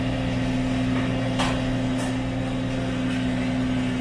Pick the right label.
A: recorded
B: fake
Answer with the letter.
A